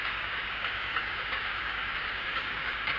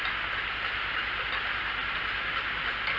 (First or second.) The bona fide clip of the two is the second